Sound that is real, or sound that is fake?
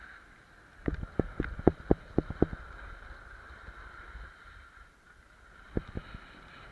real